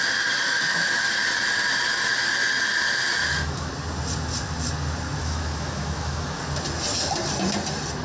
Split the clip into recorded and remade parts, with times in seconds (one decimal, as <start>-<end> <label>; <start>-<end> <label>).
0.0-0.5 recorded; 0.5-1.0 remade; 1.0-3.2 recorded; 3.2-3.7 remade; 3.7-5.2 recorded; 5.2-6.4 remade; 6.4-8.0 recorded